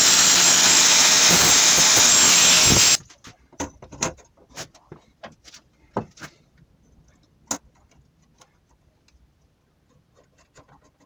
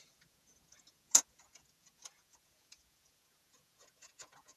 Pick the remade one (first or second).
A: second